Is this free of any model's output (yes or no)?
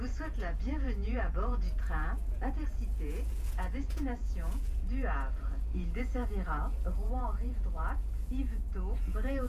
no